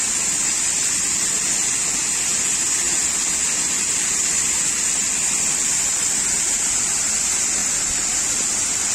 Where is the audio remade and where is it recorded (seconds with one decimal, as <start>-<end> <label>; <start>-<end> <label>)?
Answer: 0.0-8.9 recorded